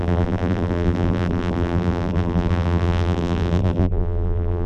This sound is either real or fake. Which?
fake